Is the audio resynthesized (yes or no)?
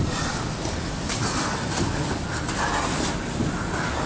no